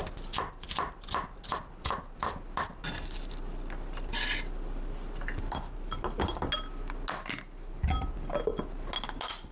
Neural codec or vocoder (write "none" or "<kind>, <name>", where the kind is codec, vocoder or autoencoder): none